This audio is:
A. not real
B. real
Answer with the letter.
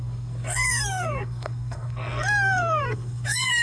A